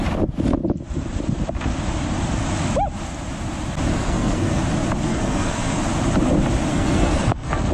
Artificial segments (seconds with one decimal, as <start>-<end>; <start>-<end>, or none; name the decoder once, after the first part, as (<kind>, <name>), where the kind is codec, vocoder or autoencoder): 3.9-4.6 (codec, SNAC); 5.1-5.8; 6.7-7.7